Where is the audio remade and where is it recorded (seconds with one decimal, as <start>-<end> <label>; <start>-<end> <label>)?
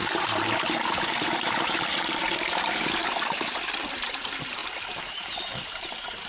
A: 0.0-4.6 remade; 4.6-5.2 recorded; 5.2-6.3 remade